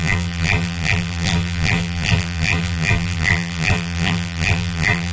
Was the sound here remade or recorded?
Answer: remade